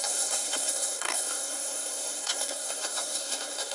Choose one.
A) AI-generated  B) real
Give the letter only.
A